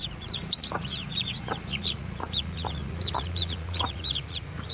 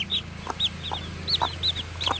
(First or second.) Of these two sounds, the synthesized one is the first